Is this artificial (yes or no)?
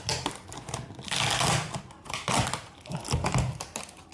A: no